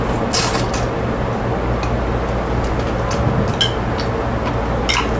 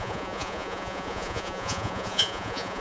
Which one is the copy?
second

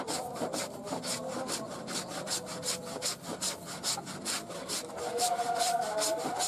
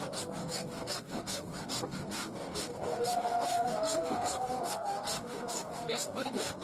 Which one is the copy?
second